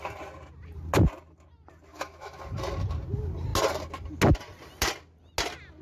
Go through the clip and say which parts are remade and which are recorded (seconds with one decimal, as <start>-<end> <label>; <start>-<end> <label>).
0.0-1.9 recorded; 1.9-2.4 remade; 2.4-5.8 recorded